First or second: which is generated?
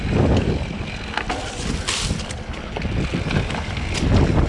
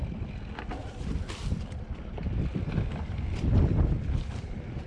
second